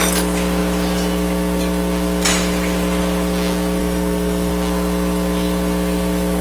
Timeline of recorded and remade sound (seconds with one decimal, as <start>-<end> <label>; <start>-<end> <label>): 0.0-3.8 recorded; 3.8-4.5 remade; 4.5-6.4 recorded